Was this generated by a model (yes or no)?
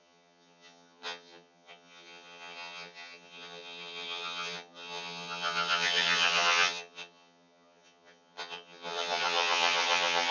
yes